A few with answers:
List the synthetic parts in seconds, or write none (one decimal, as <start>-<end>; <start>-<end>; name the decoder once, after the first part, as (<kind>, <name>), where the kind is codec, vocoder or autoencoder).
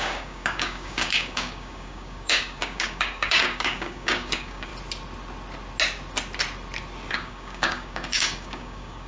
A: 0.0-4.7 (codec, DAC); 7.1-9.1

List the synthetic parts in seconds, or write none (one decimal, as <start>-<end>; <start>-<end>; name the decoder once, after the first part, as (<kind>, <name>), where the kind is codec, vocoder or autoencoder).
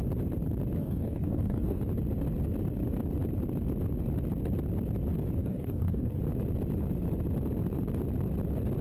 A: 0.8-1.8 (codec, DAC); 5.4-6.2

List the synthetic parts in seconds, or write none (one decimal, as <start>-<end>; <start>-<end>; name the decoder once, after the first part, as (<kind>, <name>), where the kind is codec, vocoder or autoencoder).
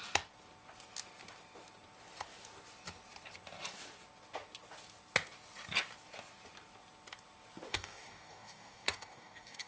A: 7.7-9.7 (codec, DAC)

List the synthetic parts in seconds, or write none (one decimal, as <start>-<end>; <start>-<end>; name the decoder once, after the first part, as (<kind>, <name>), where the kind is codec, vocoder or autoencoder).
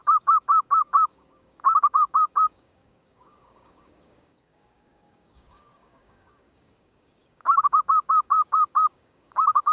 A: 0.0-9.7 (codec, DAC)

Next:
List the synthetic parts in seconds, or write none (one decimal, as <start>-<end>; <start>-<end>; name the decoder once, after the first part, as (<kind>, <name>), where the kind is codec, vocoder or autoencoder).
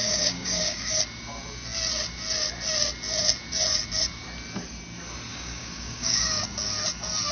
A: 0.0-1.0 (codec, DAC); 5.3-6.4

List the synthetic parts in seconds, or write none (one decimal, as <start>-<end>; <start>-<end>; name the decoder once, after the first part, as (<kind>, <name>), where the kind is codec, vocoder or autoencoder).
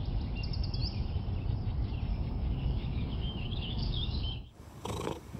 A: 2.1-5.4 (codec, DAC)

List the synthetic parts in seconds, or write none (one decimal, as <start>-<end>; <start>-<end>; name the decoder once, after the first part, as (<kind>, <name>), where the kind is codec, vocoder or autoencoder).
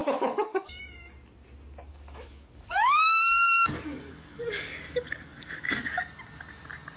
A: 0.0-0.8 (codec, DAC); 1.9-6.0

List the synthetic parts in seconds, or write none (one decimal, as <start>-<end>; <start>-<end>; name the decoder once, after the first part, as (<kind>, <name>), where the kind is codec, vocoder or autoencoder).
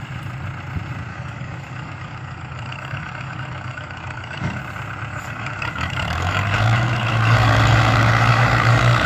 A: 1.1-4.6 (codec, DAC); 5.1-9.1